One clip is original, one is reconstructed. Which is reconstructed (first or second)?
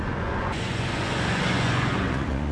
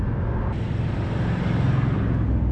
first